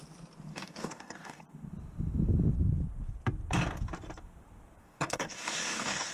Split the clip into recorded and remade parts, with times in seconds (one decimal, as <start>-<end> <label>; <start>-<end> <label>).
0.0-0.5 recorded; 0.5-1.4 remade; 1.4-4.8 recorded; 4.8-6.1 remade